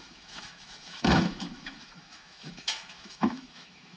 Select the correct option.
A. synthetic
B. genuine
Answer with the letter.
A